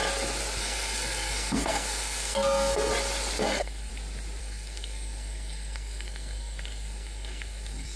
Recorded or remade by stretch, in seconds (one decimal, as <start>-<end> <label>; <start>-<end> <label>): 0.0-0.6 recorded; 0.6-2.9 remade; 2.9-3.4 recorded; 3.4-3.9 remade; 3.9-4.4 recorded; 4.4-8.0 remade